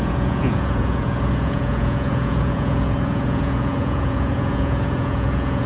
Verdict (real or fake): fake